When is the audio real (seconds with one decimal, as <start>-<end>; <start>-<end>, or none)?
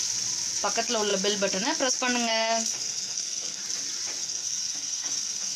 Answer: 0.0-2.3; 3.6-4.2